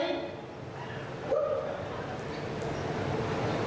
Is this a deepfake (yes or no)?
no